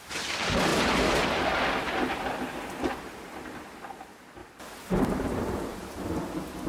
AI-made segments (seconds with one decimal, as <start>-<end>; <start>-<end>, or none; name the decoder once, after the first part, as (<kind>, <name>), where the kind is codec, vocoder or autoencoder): 4.4-5.0 (vocoder, BigVGAN v2)